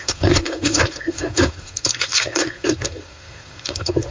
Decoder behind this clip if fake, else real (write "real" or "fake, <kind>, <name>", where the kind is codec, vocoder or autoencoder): fake, codec, SNAC